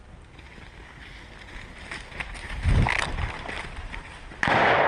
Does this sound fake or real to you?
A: real